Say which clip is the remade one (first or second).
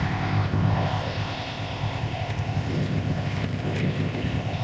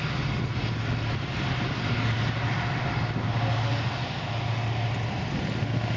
first